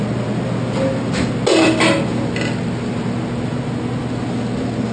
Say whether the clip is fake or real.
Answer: real